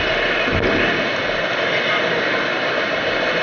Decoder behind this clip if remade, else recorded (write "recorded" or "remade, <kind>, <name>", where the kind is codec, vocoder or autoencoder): recorded